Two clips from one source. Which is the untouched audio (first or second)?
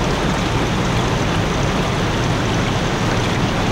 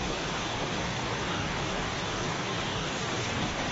first